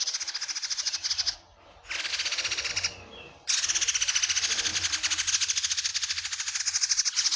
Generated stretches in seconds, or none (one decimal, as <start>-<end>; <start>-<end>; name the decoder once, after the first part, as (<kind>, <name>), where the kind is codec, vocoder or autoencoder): 2.1-2.7 (vocoder, Vocos)